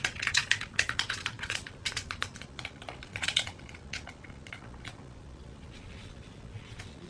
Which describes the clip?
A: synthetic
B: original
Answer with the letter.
A